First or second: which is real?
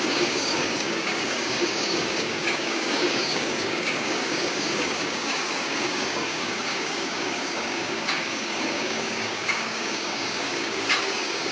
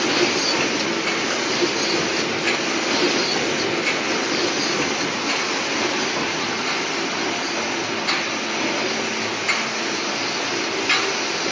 second